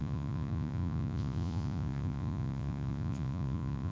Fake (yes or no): yes